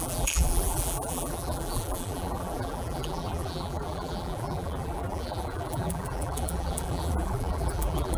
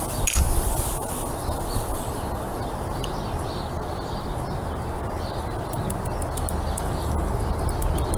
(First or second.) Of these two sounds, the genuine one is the second